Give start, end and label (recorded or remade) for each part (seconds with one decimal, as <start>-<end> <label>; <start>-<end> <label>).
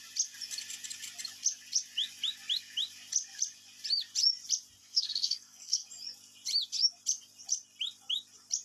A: 0.0-4.8 recorded; 4.8-5.9 remade; 5.9-8.6 recorded